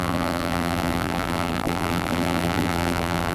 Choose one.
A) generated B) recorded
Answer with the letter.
A